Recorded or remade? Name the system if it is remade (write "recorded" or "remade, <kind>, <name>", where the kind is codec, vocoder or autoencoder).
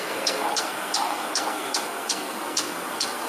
remade, codec, SNAC